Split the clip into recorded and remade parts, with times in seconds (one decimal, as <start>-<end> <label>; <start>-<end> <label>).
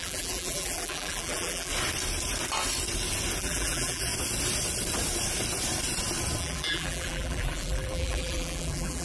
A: 0.0-1.7 remade; 1.7-3.4 recorded; 3.4-4.1 remade; 4.1-6.4 recorded; 6.4-9.0 remade